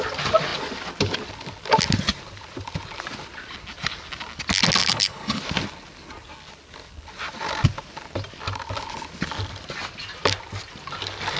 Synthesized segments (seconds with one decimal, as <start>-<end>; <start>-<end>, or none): 4.8-5.4